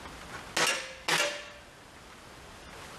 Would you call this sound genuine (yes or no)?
yes